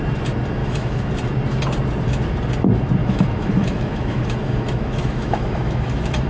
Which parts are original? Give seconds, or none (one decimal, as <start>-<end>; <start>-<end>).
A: 0.0-0.6; 1.1-3.0